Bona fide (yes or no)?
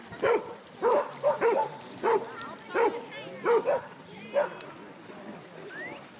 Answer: yes